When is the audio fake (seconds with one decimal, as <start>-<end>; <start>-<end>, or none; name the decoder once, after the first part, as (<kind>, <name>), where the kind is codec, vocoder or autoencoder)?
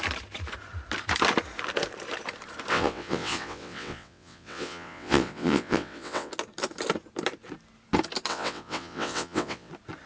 2.7-6.3 (vocoder, WaveNeXt); 8.3-9.7